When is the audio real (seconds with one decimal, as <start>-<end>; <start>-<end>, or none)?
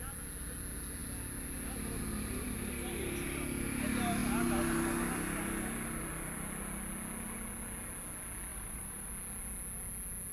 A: 0.0-8.5; 9.1-10.3